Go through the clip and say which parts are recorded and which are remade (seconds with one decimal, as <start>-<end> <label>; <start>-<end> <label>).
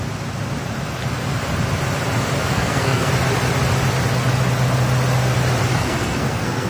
0.0-2.5 recorded; 2.5-3.1 remade; 3.1-5.7 recorded; 5.7-6.7 remade